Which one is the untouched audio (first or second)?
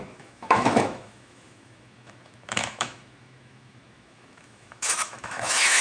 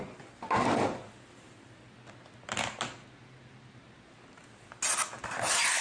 second